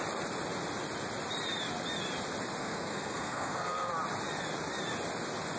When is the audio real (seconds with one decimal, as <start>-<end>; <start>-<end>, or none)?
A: 0.0-2.6; 3.9-5.6